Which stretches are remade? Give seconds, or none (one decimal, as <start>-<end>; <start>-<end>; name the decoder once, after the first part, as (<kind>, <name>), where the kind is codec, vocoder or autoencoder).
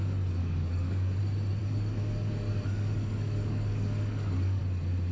0.4-1.2 (codec, DAC); 1.6-4.6